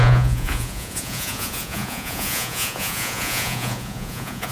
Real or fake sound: fake